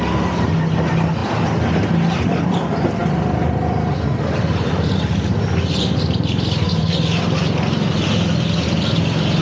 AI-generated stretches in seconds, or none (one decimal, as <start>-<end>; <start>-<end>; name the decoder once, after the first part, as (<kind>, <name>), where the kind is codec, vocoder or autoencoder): none